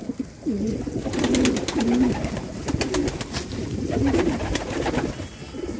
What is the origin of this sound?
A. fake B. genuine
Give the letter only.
B